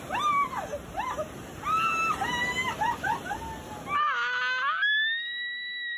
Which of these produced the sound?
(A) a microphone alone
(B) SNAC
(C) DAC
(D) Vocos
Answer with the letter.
A